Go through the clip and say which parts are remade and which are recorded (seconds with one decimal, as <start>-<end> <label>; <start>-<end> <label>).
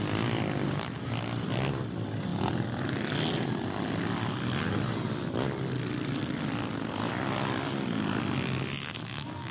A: 0.0-9.5 recorded